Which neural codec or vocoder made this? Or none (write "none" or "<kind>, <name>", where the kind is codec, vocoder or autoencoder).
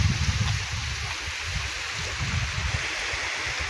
none